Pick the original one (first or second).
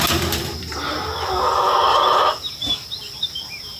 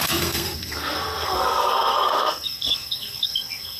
first